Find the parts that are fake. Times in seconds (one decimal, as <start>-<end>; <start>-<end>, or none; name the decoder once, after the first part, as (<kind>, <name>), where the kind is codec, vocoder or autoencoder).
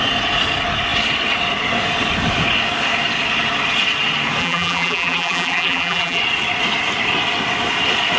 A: 4.4-6.2 (vocoder, BigVGAN v2)